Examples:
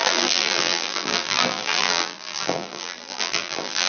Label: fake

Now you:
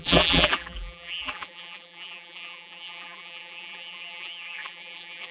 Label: fake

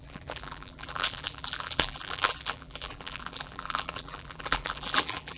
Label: fake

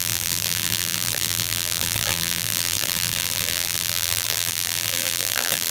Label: fake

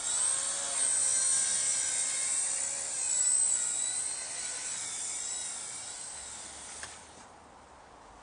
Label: real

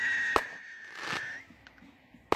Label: real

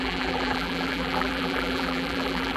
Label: fake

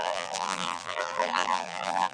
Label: fake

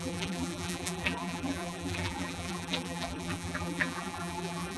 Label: fake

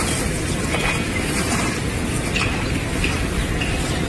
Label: real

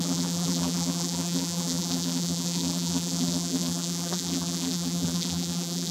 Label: fake